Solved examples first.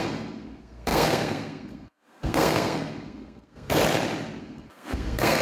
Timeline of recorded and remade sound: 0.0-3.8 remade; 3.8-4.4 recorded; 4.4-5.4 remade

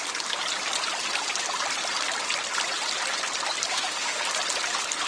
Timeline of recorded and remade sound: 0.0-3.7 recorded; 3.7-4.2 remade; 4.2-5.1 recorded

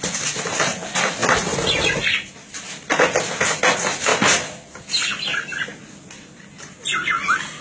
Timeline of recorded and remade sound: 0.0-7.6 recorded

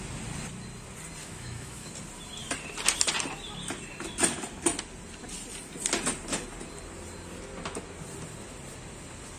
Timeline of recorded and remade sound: 0.0-1.2 recorded; 1.2-1.9 remade; 1.9-9.4 recorded

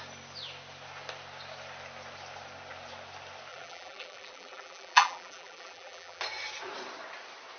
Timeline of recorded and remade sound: 0.0-3.5 recorded; 3.5-6.2 remade; 6.2-7.6 recorded

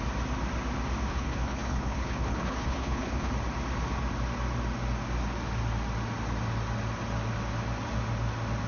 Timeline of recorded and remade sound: 0.0-1.1 recorded; 1.1-3.3 remade; 3.3-8.7 recorded